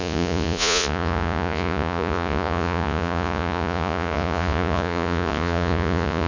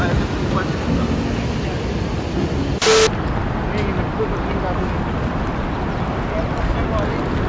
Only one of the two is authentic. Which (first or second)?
second